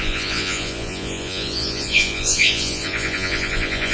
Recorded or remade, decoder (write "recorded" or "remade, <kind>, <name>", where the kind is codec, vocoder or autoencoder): remade, vocoder, Vocos